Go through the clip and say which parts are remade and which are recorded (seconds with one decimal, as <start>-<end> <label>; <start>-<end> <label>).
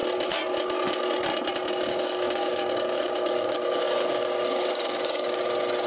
0.0-1.9 recorded; 1.9-5.4 remade; 5.4-5.9 recorded